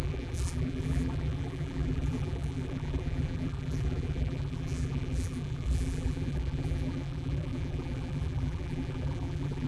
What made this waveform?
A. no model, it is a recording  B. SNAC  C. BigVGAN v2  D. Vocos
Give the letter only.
C